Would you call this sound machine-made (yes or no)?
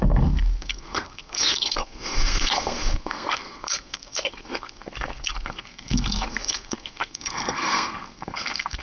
yes